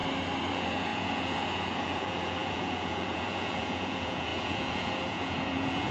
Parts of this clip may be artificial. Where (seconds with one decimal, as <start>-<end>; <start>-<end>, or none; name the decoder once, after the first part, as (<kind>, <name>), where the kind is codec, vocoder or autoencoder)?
0.5-5.9 (vocoder, Vocos)